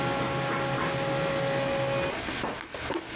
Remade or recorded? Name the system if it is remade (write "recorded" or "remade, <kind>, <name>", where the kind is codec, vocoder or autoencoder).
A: recorded